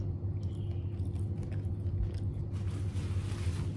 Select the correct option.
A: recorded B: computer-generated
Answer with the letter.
A